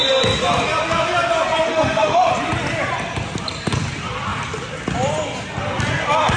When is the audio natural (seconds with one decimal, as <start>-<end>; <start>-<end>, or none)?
0.0-1.7; 2.3-6.4